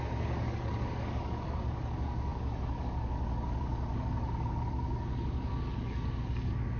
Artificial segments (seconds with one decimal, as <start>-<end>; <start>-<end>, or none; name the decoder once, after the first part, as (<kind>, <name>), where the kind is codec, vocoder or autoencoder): 0.0-6.8 (codec, DAC)